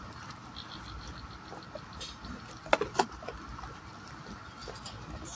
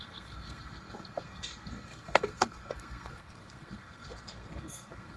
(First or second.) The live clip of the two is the first